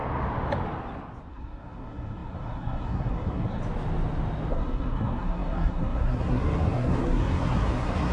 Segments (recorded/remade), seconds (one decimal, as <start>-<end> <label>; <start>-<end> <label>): 0.0-1.3 recorded; 1.3-3.6 remade; 3.6-4.5 recorded; 4.5-8.1 remade